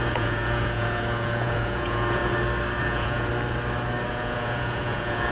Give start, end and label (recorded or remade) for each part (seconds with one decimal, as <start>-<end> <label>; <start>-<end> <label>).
0.0-2.2 remade; 2.2-2.8 recorded; 2.8-3.3 remade; 3.3-4.1 recorded; 4.1-5.3 remade